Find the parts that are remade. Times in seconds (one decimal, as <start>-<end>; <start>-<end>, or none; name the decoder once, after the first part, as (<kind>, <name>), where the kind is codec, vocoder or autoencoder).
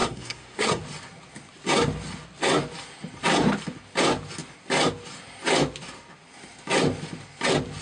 0.0-0.8 (codec, SNAC)